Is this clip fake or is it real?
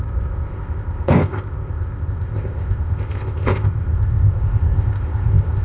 fake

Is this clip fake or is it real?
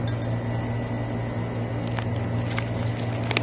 real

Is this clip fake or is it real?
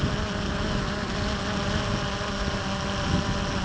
real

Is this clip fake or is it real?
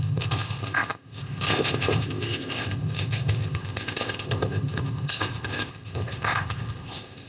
fake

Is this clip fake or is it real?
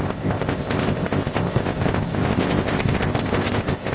fake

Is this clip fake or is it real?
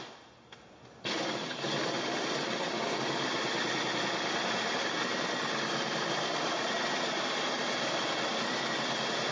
real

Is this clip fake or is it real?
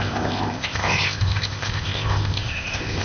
fake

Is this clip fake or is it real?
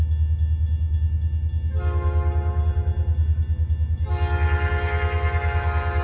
real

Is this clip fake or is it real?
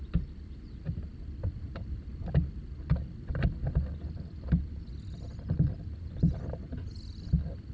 real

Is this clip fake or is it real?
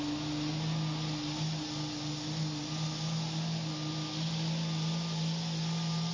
real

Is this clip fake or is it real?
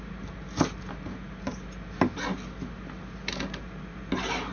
real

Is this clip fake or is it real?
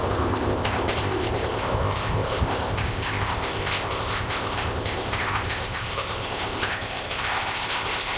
fake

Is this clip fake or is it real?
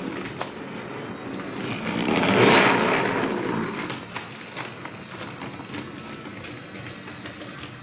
real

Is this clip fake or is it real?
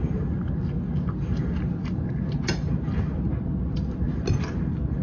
real